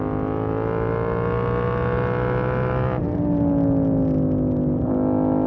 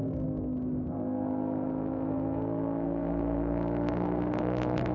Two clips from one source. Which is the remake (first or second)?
second